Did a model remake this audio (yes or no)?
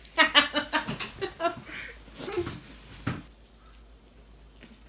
no